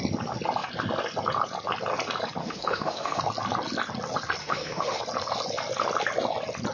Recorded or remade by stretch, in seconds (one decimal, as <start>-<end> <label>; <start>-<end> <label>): 0.0-2.4 recorded; 2.4-3.2 remade; 3.2-4.4 recorded; 4.4-5.0 remade; 5.0-6.7 recorded